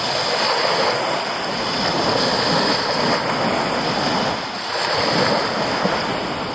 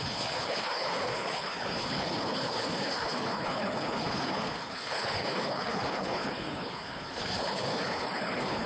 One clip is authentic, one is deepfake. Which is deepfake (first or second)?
second